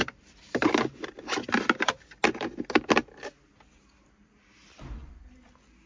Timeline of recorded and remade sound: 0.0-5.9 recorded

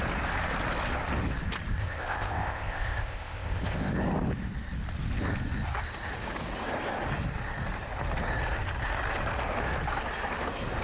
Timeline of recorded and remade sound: 0.0-1.7 recorded; 1.7-3.9 remade; 3.9-10.8 recorded

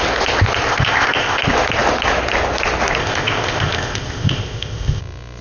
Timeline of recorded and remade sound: 0.0-0.7 recorded; 0.7-1.4 remade; 1.4-3.0 recorded; 3.0-5.0 remade; 5.0-5.4 recorded

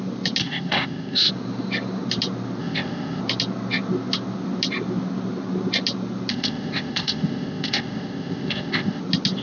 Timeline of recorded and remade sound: 0.0-0.4 recorded; 0.4-1.3 remade; 1.3-2.6 recorded; 2.6-3.2 remade; 3.2-6.3 recorded; 6.3-9.0 remade; 9.0-9.4 recorded

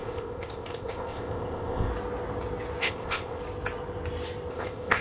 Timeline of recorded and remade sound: 0.0-1.9 remade; 1.9-2.8 recorded; 2.8-3.4 remade; 3.4-4.5 recorded; 4.5-5.0 remade

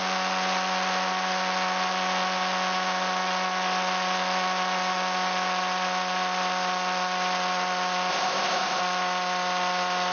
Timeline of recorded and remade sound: 0.0-8.1 recorded; 8.1-8.8 remade; 8.8-10.1 recorded

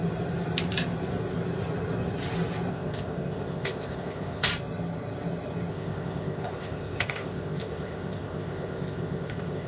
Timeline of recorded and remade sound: 0.0-2.7 recorded; 2.7-4.5 remade; 4.5-5.7 recorded; 5.7-9.7 remade